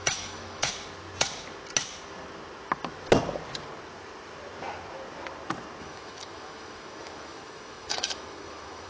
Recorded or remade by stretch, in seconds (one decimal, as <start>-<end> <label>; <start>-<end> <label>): 0.0-0.7 remade; 0.7-5.8 recorded; 5.8-8.9 remade